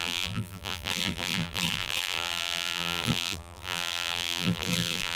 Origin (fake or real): fake